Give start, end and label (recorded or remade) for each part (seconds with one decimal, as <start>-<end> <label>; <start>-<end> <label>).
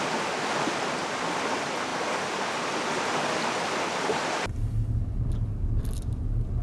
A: 0.0-6.6 recorded